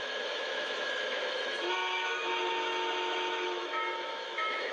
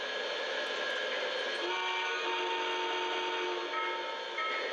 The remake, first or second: first